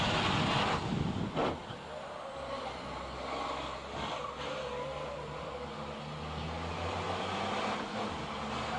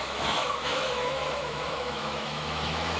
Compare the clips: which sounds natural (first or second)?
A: first